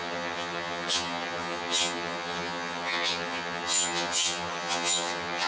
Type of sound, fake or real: fake